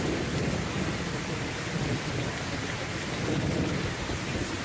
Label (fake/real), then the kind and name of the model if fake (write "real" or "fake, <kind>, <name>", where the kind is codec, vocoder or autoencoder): real